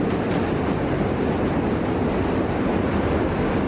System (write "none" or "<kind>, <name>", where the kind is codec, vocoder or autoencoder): none